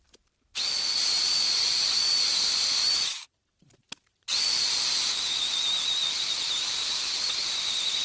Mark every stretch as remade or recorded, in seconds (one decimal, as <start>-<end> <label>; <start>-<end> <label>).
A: 0.0-8.0 remade